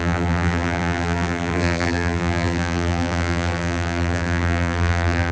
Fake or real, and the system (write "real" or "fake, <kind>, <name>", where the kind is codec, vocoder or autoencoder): fake, vocoder, BigVGAN v2